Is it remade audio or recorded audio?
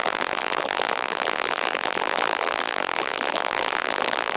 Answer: remade